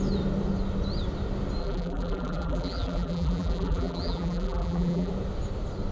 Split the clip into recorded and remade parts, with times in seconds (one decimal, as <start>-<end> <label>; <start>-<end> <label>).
0.0-1.6 recorded; 1.6-5.1 remade; 5.1-5.9 recorded